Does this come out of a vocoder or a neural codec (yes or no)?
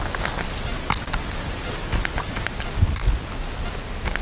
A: no